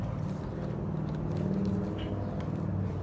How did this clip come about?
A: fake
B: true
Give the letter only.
B